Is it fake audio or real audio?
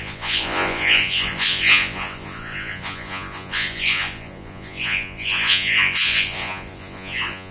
fake